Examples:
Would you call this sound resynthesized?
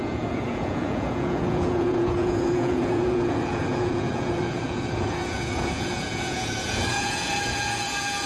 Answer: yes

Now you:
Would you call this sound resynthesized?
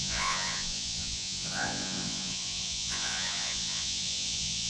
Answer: yes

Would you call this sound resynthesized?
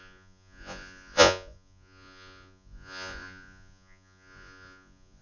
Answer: yes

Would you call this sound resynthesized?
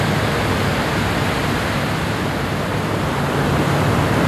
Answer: no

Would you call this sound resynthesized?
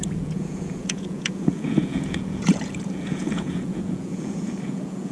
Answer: yes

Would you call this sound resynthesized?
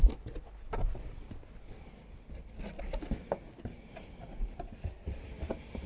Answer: no